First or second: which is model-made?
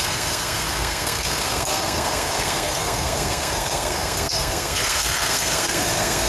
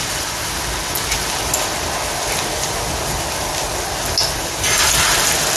first